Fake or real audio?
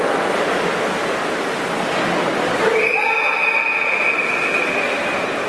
real